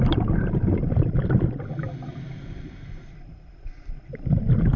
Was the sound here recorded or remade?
recorded